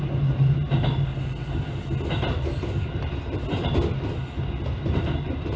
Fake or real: real